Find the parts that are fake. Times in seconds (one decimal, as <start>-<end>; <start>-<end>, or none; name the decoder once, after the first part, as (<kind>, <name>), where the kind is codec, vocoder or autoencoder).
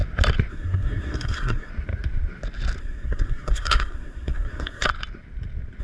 0.5-1.7 (codec, SNAC); 2.8-4.9